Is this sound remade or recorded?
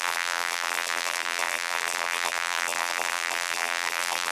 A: remade